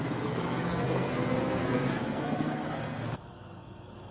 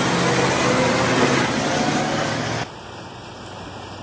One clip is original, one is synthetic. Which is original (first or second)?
second